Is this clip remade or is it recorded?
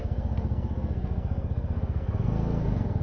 remade